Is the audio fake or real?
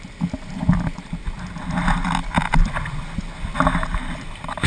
real